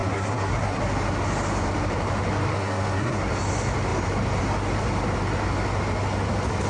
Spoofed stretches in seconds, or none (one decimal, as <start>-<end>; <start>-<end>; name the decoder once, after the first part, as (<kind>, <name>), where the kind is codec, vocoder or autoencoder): 0.0-0.8 (codec, SNAC); 2.5-3.3